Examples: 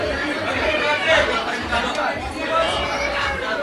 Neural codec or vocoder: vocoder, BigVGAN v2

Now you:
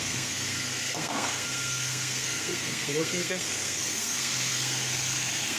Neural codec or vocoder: codec, SNAC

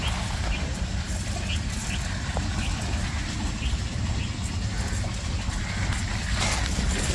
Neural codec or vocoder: none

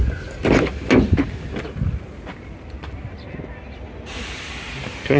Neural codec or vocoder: none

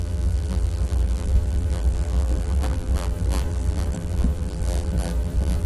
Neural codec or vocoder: vocoder, BigVGAN v2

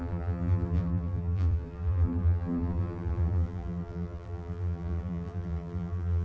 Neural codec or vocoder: vocoder, BigVGAN v2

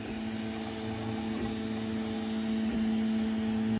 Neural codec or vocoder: none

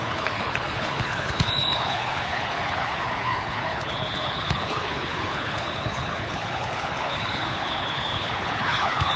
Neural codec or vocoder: codec, HILCodec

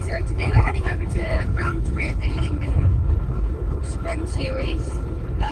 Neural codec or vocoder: codec, HILCodec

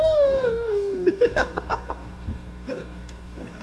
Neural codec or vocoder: codec, DAC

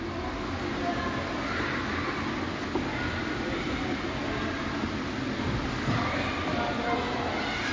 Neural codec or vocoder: none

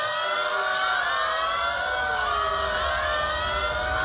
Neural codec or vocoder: none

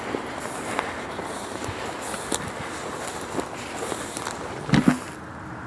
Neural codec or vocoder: none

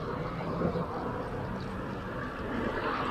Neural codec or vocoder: none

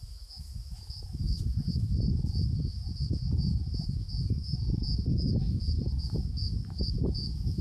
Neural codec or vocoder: autoencoder, DAC-VAE